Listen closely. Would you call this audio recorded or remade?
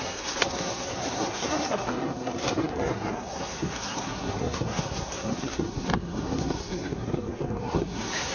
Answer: remade